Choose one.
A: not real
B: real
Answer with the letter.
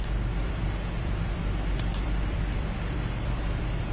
A